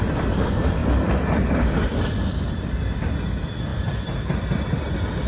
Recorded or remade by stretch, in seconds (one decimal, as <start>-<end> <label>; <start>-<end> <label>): 0.0-5.3 remade